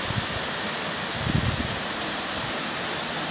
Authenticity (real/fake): real